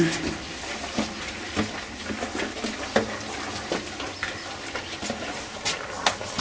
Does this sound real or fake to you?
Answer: real